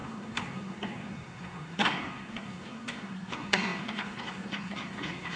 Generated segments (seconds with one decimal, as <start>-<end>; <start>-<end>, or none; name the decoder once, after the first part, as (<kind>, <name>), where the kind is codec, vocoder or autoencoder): 0.0-5.4 (codec, SNAC)